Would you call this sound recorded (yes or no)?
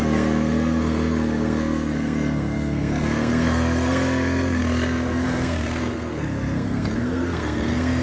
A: no